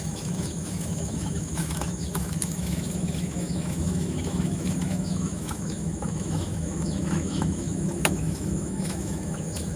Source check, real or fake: fake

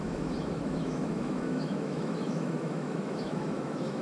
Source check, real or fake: fake